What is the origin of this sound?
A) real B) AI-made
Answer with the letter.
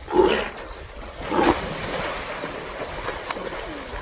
A